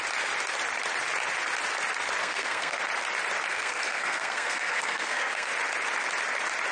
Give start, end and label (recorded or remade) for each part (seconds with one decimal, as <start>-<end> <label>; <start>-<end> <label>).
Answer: 0.0-2.2 recorded; 2.2-2.8 remade; 2.8-3.5 recorded; 3.5-5.5 remade; 5.5-6.7 recorded